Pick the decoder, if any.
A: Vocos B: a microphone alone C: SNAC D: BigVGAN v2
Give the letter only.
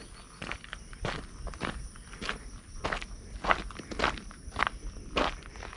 B